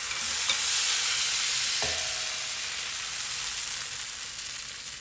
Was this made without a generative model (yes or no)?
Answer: yes